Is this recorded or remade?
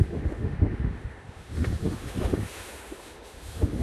remade